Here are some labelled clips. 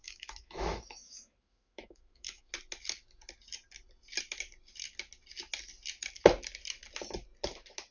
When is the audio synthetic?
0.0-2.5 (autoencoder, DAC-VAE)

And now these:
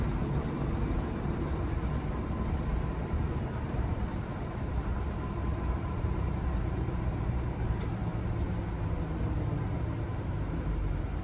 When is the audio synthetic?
0.0-8.1 (vocoder, BigVGAN v2); 9.6-11.2